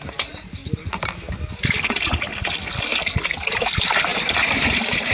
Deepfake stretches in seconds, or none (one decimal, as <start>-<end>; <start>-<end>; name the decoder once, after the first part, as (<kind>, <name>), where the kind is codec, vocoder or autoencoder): 0.0-0.6 (vocoder, BigVGAN v2); 3.3-5.1